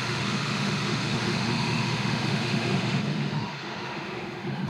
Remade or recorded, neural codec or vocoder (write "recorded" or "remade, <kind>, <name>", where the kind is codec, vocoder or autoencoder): remade, autoencoder, DAC-VAE